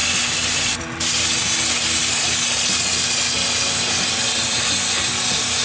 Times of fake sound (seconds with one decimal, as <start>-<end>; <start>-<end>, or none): none